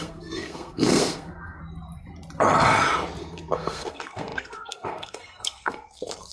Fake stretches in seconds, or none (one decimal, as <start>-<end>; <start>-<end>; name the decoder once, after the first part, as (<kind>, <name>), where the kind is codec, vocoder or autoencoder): 0.0-1.6 (codec, SNAC); 3.2-6.3